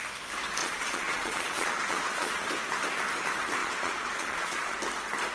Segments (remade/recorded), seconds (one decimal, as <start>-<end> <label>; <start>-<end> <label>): 0.0-0.6 recorded; 0.6-2.4 remade; 2.4-3.6 recorded; 3.6-4.8 remade; 4.8-5.3 recorded

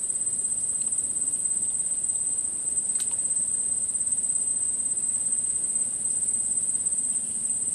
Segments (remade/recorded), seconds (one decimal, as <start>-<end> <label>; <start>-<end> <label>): 0.0-0.5 remade; 0.5-2.7 recorded; 2.7-7.7 remade

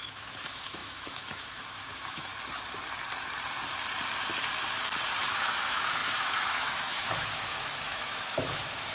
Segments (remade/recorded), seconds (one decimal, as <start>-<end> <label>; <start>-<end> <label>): 0.0-2.3 remade; 2.3-5.2 recorded; 5.2-8.9 remade

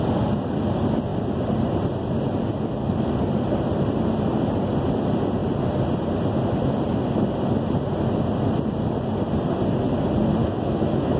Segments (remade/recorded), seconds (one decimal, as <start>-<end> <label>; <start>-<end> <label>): 0.0-10.4 recorded; 10.4-11.2 remade